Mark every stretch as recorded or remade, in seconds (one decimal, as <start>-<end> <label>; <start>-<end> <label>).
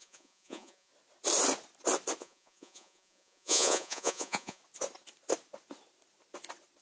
0.0-0.9 remade; 0.9-2.2 recorded; 2.2-4.6 remade; 4.6-6.8 recorded